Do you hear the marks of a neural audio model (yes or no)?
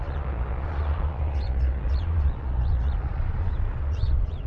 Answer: yes